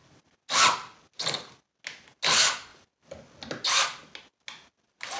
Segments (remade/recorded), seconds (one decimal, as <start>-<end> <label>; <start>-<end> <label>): 0.0-5.2 recorded